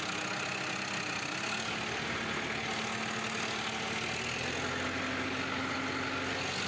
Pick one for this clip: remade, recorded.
recorded